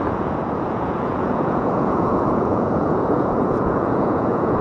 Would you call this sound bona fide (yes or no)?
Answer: no